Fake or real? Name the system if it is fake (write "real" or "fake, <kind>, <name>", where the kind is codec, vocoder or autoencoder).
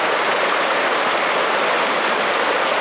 real